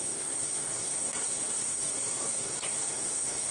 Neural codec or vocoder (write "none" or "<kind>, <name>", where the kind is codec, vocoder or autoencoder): codec, SNAC